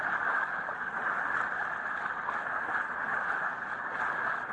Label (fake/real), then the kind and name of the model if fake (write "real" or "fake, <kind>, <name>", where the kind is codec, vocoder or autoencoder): real